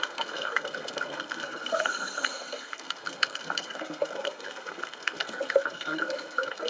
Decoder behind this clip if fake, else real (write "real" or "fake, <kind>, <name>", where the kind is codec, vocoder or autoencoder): fake, codec, SNAC